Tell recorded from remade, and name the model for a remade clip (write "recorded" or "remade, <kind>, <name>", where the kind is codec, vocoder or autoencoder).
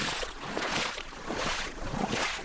remade, vocoder, Vocos